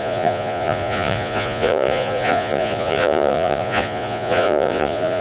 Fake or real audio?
fake